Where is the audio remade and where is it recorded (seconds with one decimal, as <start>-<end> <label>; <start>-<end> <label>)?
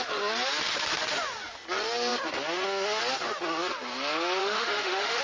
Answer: 0.0-4.4 recorded; 4.4-5.2 remade